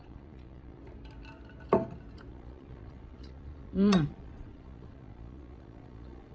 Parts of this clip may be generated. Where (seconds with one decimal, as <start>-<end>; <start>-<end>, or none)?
0.0-0.8; 2.3-6.3